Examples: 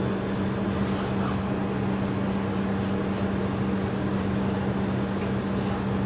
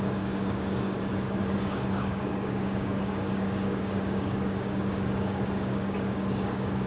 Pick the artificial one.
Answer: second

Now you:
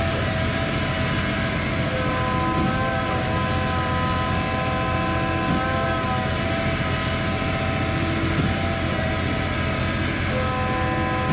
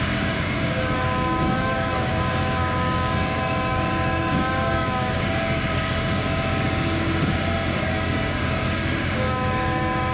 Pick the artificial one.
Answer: second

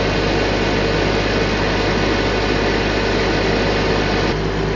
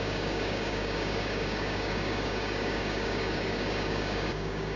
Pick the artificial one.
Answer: second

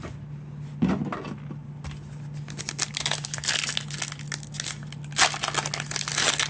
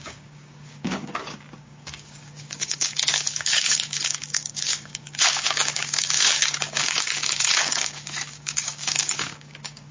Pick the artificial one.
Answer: second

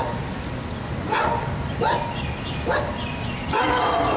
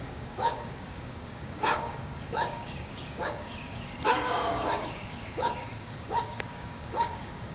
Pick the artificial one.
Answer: second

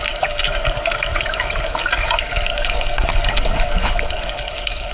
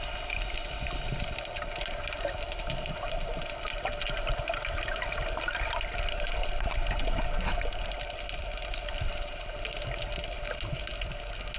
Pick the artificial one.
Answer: first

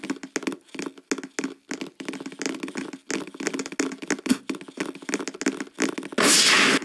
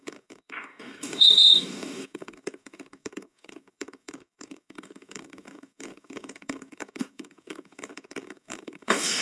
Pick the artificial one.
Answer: second